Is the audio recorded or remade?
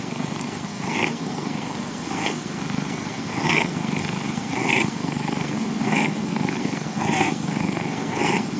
remade